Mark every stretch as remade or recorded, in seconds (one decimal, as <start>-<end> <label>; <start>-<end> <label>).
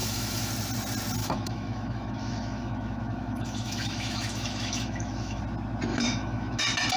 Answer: 0.0-0.5 remade; 0.5-1.2 recorded; 1.2-5.4 remade; 5.4-5.9 recorded; 5.9-6.6 remade; 6.6-7.0 recorded